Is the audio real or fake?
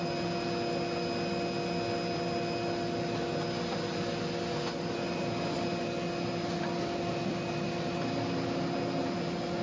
real